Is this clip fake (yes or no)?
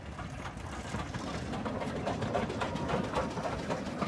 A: no